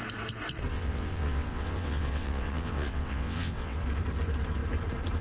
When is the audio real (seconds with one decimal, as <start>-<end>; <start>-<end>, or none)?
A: 0.0-0.7; 3.8-5.2